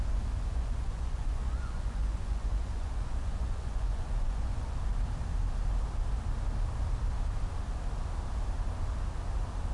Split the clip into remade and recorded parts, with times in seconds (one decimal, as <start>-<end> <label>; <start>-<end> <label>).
0.0-0.5 recorded; 0.5-4.8 remade; 4.8-9.7 recorded